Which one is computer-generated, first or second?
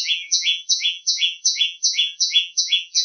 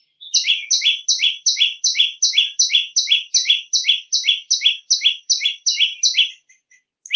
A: first